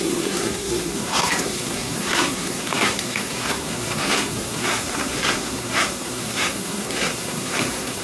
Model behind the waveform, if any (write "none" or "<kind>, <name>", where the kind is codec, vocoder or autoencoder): codec, SNAC